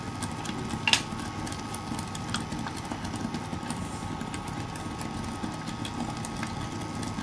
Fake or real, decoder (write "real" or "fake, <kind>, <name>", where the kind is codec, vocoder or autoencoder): real